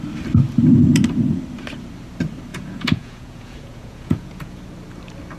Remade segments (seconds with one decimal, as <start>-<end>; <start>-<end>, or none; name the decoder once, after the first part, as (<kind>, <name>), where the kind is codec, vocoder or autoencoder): 2.5-4.6 (vocoder, Vocos)